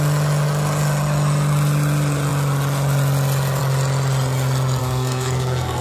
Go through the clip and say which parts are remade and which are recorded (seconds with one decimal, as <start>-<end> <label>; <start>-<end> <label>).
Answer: 0.0-4.8 recorded; 4.8-5.8 remade